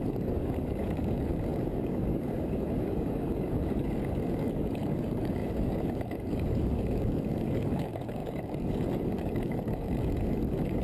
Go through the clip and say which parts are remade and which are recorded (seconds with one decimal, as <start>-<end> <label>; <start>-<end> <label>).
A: 0.0-10.8 remade